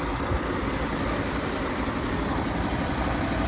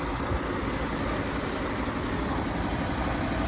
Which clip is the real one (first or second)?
second